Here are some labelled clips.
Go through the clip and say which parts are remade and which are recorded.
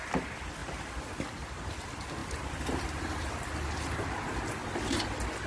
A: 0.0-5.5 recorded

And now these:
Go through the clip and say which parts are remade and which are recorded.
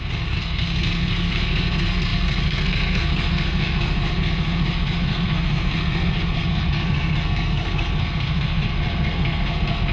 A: 0.0-9.9 remade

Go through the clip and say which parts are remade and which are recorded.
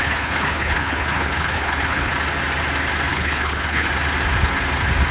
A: 0.0-2.1 remade; 2.1-3.1 recorded; 3.1-3.9 remade; 3.9-5.1 recorded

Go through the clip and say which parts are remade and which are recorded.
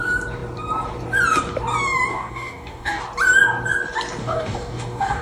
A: 0.0-2.1 recorded; 2.1-3.0 remade; 3.0-4.2 recorded; 4.2-5.2 remade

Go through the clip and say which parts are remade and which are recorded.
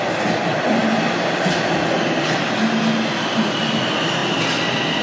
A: 0.0-5.0 recorded